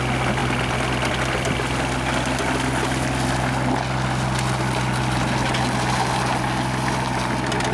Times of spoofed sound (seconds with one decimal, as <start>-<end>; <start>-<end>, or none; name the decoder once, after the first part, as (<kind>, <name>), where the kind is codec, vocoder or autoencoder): none